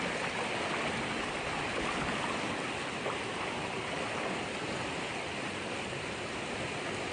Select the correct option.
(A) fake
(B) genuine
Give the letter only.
B